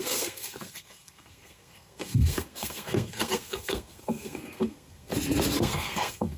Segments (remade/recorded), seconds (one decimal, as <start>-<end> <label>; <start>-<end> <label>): 0.0-5.1 remade; 5.1-5.6 recorded; 5.6-6.4 remade